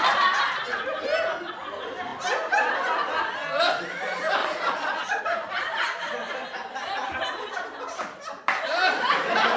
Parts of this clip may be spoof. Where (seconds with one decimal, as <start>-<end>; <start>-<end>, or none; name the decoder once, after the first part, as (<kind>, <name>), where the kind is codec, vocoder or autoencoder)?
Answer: 4.4-5.2 (vocoder, Vocos)